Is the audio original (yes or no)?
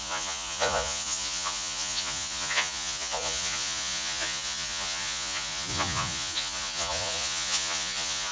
no